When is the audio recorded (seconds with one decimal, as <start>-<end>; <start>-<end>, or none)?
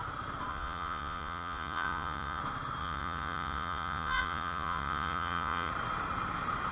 0.0-0.5; 2.4-2.8; 5.7-6.7